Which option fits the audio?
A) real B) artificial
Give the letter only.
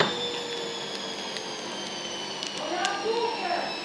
A